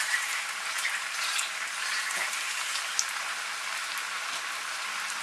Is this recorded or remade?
remade